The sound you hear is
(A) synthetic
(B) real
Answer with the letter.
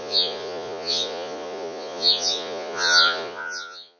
A